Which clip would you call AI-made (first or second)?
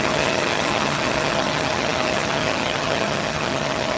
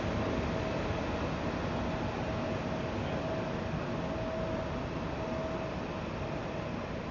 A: first